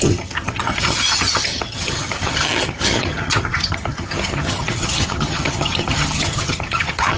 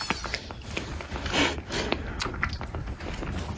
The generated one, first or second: first